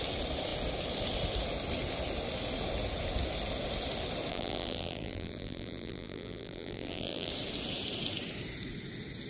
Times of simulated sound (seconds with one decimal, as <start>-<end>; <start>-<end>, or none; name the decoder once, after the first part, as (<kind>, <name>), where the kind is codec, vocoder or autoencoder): 4.3-7.3 (vocoder, BigVGAN v2)

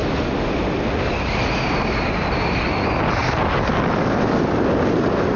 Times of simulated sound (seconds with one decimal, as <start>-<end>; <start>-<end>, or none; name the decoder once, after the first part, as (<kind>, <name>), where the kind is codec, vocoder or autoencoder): 3.2-4.7 (vocoder, BigVGAN v2)

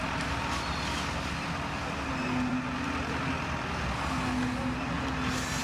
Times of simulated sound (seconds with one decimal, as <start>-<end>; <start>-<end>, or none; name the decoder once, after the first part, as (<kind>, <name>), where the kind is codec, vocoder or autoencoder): none

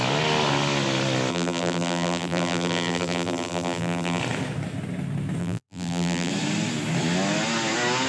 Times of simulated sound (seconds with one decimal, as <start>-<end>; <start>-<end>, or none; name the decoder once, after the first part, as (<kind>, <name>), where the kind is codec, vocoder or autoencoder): 1.3-4.2 (vocoder, BigVGAN v2); 5.4-6.3